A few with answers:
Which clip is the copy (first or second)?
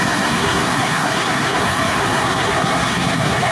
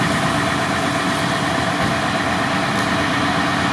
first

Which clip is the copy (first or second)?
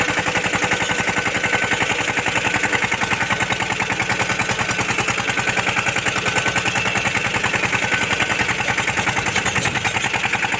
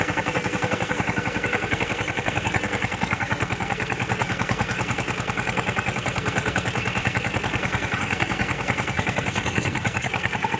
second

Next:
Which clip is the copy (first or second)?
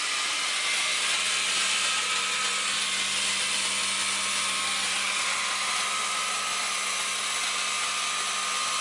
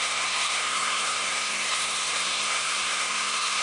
second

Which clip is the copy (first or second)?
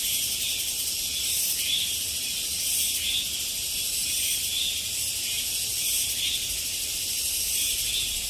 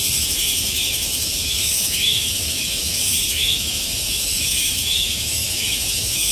second